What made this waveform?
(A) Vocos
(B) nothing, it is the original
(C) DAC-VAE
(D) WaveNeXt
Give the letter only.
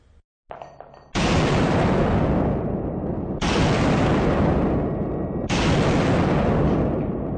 B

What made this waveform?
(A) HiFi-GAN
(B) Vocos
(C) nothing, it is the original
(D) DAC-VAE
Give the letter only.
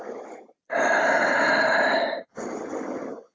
C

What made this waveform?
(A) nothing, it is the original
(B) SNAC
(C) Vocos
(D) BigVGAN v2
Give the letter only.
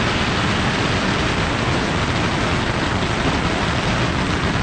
A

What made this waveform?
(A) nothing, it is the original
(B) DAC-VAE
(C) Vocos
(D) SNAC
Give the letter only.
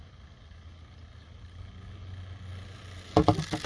A